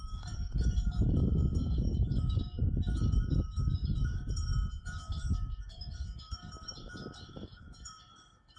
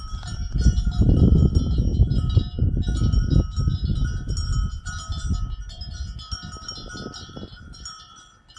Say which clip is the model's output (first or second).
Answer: first